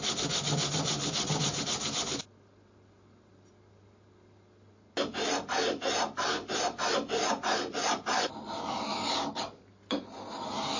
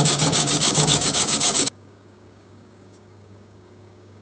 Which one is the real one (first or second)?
first